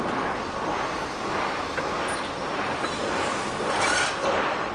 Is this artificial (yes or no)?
no